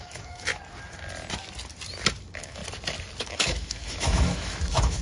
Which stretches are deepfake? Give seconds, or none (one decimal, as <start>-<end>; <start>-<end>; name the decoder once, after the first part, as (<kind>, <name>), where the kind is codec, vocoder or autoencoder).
0.0-0.5 (autoencoder, DAC-VAE); 2.2-2.6; 3.2-5.0